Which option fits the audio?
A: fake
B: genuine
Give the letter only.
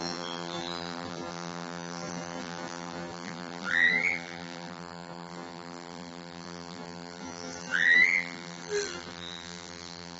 A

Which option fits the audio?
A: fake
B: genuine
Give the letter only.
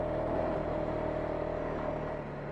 B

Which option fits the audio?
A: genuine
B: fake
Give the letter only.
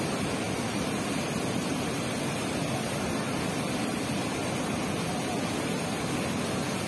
A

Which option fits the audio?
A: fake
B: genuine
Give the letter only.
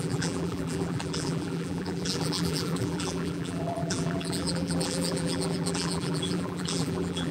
A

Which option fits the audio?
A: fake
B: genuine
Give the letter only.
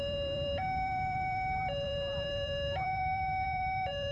A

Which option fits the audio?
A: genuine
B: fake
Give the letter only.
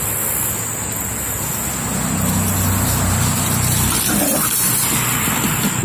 A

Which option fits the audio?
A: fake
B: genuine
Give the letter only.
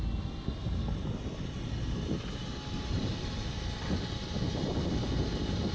B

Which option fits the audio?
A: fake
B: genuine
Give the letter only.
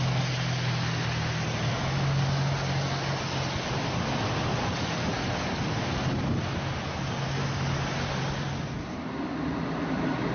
B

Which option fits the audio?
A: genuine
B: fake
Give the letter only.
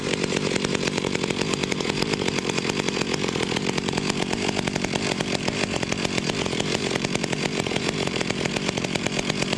B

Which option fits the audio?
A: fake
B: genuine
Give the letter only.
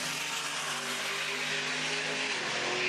B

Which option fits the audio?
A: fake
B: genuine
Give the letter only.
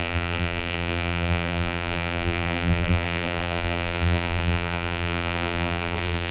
A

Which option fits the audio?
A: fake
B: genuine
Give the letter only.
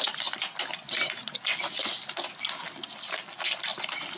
B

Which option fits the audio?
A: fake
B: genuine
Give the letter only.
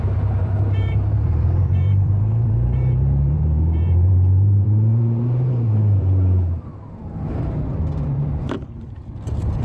A